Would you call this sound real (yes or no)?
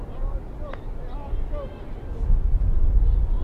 yes